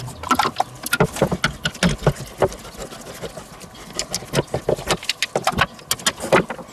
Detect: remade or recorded recorded